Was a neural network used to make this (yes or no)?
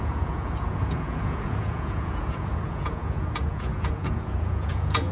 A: yes